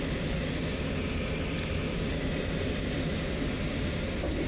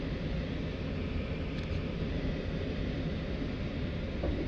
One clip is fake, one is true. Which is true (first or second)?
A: first